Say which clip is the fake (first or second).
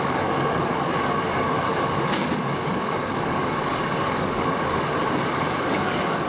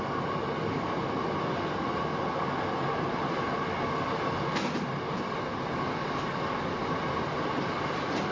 first